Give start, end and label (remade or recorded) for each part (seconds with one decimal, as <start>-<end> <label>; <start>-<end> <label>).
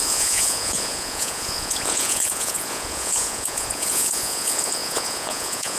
0.0-5.8 remade